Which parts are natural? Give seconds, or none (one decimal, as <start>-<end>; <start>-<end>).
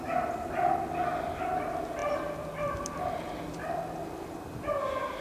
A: 0.0-5.2